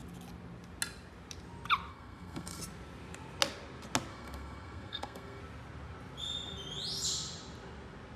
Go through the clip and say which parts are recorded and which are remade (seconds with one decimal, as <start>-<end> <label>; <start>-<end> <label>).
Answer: 0.0-1.9 recorded; 1.9-2.6 remade; 2.6-4.1 recorded; 4.1-5.4 remade; 5.4-8.2 recorded